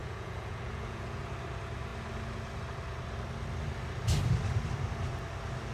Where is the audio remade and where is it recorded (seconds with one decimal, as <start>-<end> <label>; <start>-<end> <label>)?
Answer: 0.0-1.2 remade; 1.2-5.7 recorded